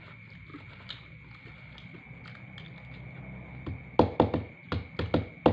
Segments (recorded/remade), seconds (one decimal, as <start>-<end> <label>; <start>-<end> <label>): 0.0-5.5 recorded